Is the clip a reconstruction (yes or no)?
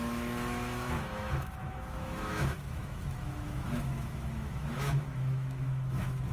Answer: yes